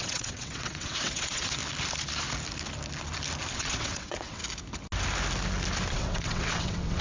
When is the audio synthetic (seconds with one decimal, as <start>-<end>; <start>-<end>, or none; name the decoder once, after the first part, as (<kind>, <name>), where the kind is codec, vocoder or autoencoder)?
0.0-1.6 (vocoder, WaveNeXt); 3.5-4.4; 5.9-7.0